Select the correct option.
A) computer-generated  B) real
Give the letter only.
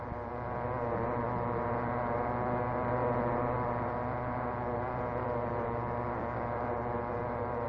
B